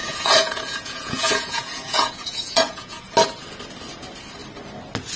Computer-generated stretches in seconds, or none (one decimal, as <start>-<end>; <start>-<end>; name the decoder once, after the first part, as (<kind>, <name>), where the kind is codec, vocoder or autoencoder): 0.0-3.1 (vocoder, Vocos)

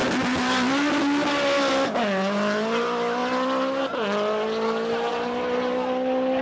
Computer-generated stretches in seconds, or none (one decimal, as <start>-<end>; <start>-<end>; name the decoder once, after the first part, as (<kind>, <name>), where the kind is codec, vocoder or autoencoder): none

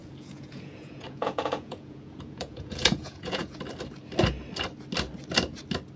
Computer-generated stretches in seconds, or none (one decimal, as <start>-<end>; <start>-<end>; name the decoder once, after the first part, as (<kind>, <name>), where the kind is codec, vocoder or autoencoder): 0.0-3.6 (vocoder, Vocos)

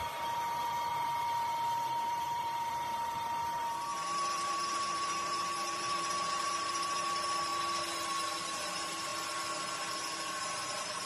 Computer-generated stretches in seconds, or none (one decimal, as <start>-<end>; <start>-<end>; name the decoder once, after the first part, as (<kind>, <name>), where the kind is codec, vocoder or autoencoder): 0.0-7.5 (vocoder, BigVGAN v2); 8.4-9.1; 10.5-11.1

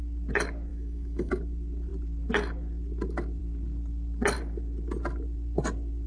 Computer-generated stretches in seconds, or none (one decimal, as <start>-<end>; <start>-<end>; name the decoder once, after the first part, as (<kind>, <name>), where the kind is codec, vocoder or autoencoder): 0.7-1.3 (autoencoder, DAC-VAE)

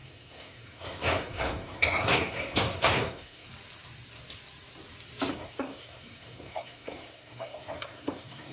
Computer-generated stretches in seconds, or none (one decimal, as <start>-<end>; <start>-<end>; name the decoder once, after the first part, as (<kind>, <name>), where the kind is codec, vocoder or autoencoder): 0.0-3.5 (codec, SNAC); 5.3-8.5

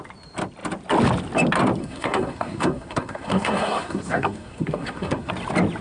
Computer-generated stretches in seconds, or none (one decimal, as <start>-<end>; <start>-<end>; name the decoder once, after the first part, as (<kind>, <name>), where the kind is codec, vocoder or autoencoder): 1.8-5.3 (codec, SNAC)